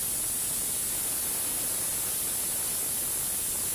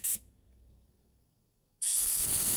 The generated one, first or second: second